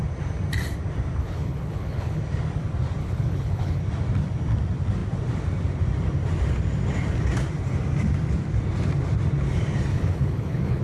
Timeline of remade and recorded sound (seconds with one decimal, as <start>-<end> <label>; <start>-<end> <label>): 0.0-1.2 recorded; 1.2-2.2 remade; 2.2-3.0 recorded; 3.0-3.8 remade; 3.8-9.9 recorded; 9.9-10.8 remade